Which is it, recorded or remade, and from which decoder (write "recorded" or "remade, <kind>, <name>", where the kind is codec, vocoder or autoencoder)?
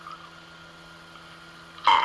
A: recorded